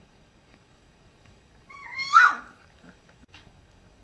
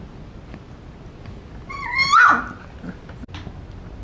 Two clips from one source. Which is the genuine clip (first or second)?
second